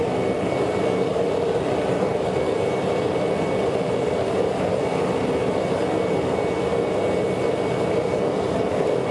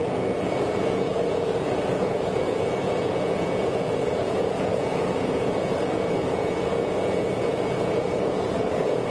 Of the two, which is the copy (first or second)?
second